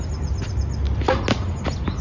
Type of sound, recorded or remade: recorded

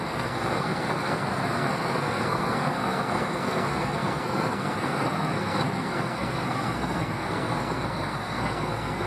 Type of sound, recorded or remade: remade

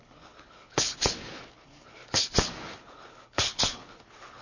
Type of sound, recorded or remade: remade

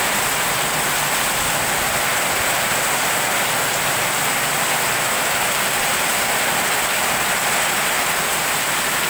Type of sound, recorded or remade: recorded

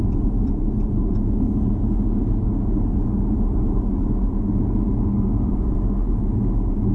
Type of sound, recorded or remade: recorded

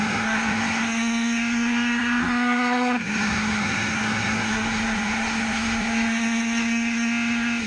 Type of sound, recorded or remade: remade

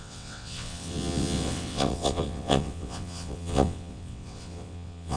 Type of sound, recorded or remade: remade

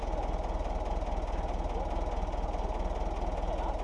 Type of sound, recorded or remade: recorded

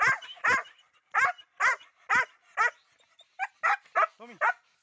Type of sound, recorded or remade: recorded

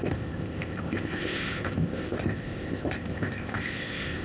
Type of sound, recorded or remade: remade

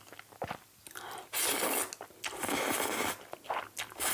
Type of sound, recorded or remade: recorded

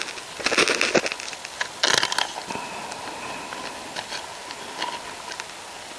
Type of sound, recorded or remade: recorded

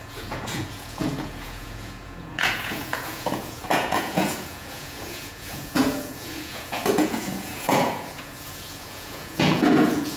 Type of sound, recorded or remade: remade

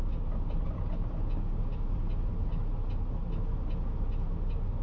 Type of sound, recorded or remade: recorded